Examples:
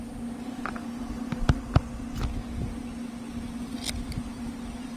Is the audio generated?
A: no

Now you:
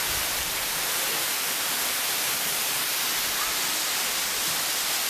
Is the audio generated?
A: no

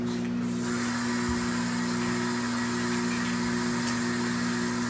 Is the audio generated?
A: no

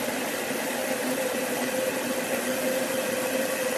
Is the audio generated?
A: no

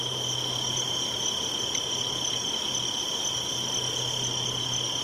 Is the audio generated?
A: yes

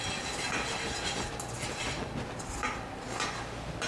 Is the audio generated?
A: no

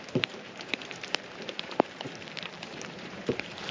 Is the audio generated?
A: yes